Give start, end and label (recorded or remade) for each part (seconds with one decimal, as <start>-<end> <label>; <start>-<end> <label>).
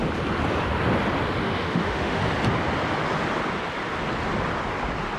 0.0-1.4 recorded; 1.4-2.2 remade; 2.2-5.2 recorded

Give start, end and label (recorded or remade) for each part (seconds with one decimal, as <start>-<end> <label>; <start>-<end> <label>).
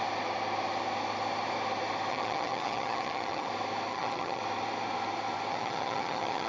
0.0-2.1 recorded; 2.1-3.5 remade; 3.5-3.9 recorded; 3.9-4.4 remade; 4.4-5.5 recorded; 5.5-6.5 remade